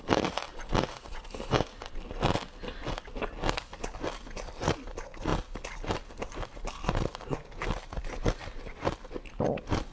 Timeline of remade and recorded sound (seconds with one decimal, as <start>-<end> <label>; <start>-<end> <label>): 0.0-9.9 recorded